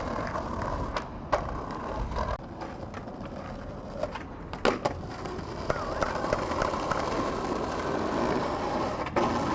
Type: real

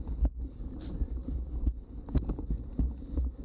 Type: fake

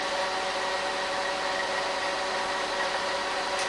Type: real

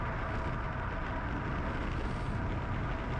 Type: real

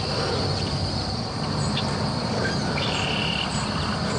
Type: real